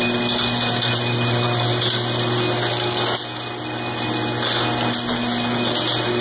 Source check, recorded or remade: recorded